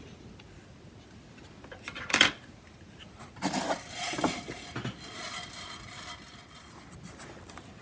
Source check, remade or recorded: recorded